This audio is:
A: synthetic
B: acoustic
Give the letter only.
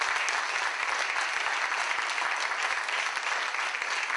B